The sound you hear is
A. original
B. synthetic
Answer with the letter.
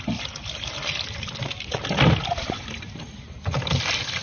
A